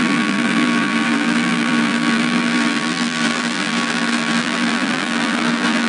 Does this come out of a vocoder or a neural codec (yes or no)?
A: yes